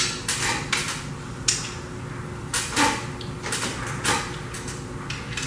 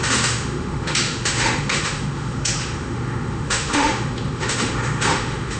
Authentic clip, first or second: first